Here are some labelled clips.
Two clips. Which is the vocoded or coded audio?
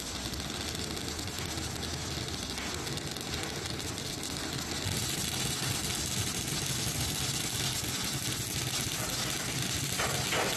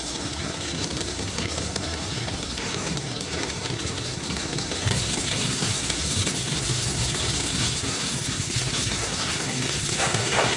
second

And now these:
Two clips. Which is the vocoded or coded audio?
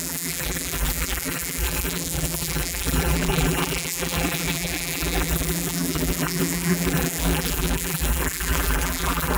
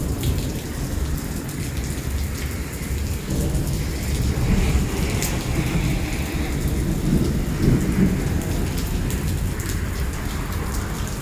first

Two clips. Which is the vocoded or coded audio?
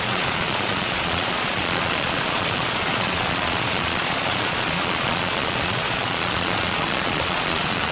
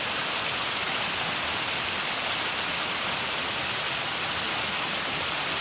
first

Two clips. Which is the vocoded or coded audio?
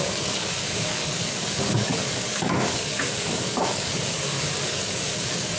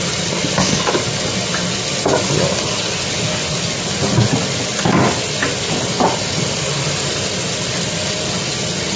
first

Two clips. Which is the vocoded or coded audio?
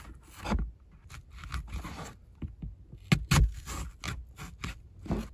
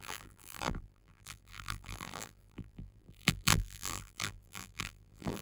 second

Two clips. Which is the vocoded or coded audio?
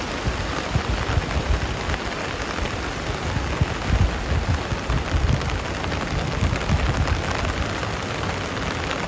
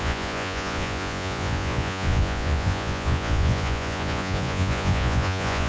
second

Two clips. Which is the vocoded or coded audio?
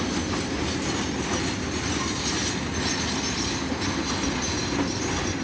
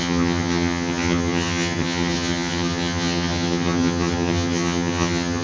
second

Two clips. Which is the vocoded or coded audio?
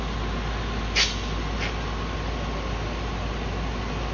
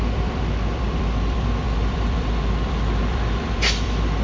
second